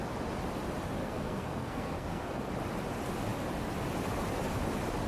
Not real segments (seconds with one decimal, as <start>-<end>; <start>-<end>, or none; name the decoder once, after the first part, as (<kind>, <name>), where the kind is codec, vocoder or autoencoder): 1.0-2.5 (codec, SNAC)